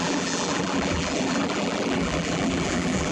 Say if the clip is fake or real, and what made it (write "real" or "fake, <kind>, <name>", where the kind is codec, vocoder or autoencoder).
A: fake, vocoder, BigVGAN v2